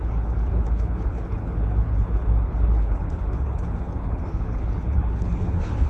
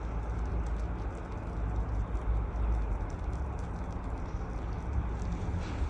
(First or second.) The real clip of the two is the second